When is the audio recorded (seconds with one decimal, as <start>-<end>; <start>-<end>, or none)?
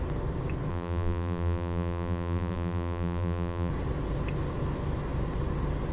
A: 0.0-0.7; 3.7-5.9